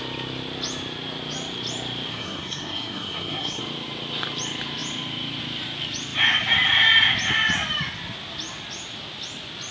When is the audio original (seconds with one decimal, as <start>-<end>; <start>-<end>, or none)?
0.0-2.1; 3.6-9.7